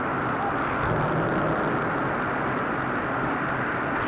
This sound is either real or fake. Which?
real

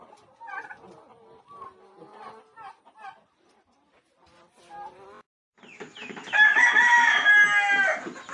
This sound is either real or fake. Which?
real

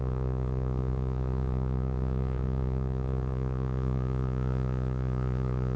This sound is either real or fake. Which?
fake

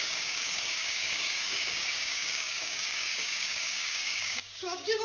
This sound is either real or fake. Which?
fake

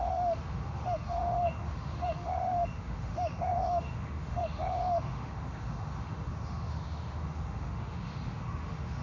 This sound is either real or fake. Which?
fake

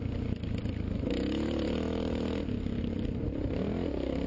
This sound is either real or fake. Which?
real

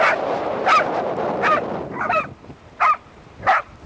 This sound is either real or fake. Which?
real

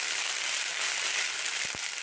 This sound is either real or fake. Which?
real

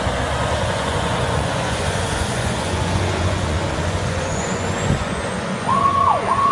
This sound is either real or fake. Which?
fake